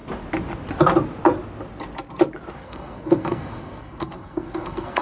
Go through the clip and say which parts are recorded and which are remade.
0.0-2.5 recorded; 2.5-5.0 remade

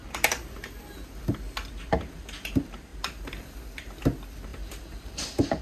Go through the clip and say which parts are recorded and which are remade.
0.0-4.5 recorded; 4.5-5.6 remade

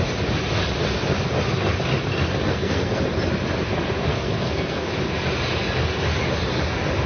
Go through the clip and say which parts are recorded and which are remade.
0.0-2.5 recorded; 2.5-3.0 remade; 3.0-4.1 recorded; 4.1-4.9 remade; 4.9-7.1 recorded

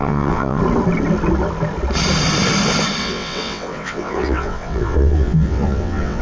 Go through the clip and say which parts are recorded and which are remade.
0.0-0.6 remade; 0.6-3.0 recorded; 3.0-6.2 remade

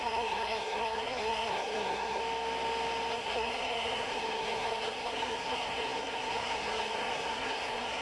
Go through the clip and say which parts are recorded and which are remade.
0.0-2.2 remade; 2.2-3.1 recorded; 3.1-8.0 remade

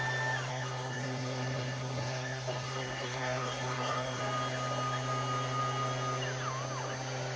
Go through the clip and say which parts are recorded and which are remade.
0.0-0.5 recorded; 0.5-4.2 remade; 4.2-7.4 recorded

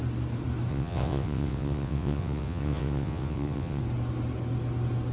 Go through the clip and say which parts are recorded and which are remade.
0.0-0.7 recorded; 0.7-3.8 remade; 3.8-5.1 recorded

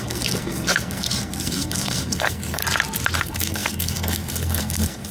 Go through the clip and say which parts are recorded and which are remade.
0.0-2.6 remade; 2.6-3.2 recorded; 3.2-5.1 remade